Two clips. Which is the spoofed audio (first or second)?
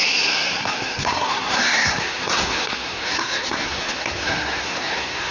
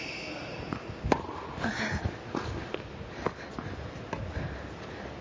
first